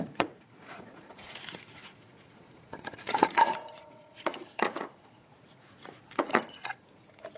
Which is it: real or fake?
fake